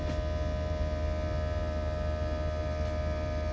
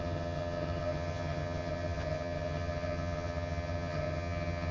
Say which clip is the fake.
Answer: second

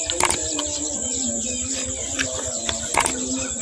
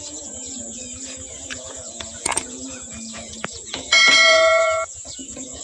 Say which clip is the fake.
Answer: second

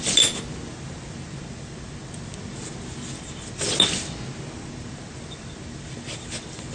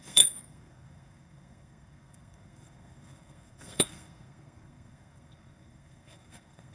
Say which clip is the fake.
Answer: second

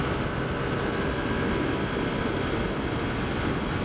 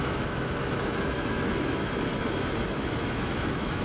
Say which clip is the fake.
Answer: second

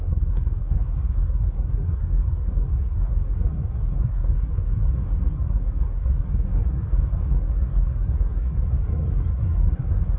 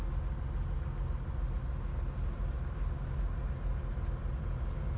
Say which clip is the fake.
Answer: first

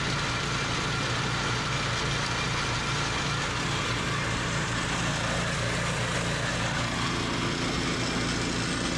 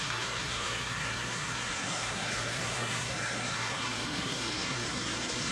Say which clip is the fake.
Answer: second